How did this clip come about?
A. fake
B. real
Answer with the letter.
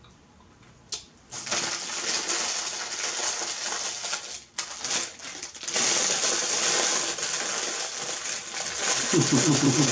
B